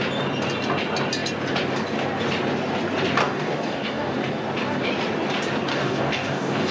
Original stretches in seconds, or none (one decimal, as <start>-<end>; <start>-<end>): 0.0-3.2; 4.1-5.7